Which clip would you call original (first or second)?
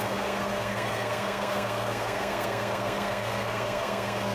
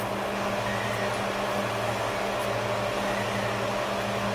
second